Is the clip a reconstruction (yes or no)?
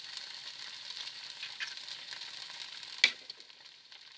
no